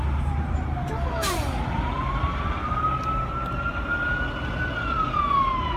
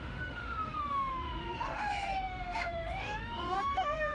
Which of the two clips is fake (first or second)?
second